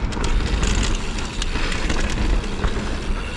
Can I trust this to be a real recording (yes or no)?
yes